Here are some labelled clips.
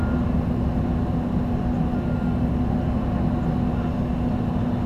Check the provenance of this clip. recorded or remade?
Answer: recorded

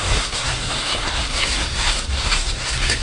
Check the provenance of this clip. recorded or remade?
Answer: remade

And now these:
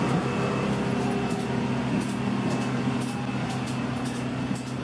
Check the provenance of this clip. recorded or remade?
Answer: recorded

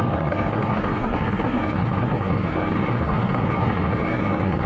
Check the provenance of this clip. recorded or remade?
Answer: remade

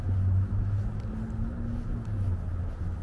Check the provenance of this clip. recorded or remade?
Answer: recorded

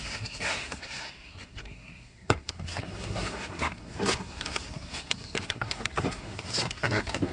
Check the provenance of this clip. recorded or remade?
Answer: remade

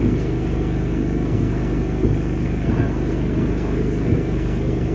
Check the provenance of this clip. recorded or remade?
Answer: remade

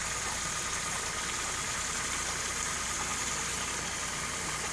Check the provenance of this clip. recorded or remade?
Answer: recorded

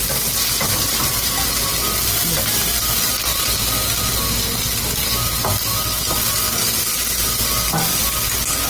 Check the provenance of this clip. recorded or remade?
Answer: recorded